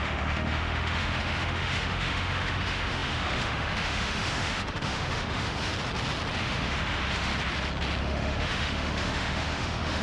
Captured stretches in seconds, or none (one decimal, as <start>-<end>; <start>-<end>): 5.7-6.4; 7.3-8.0